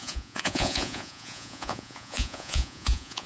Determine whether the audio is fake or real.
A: fake